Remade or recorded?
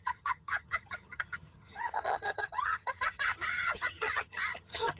remade